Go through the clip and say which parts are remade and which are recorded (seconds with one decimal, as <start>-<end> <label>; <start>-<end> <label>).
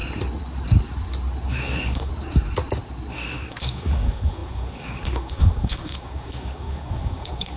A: 0.0-1.5 recorded; 1.5-2.1 remade; 2.1-3.1 recorded; 3.1-7.6 remade